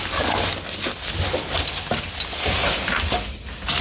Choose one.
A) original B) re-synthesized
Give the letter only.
A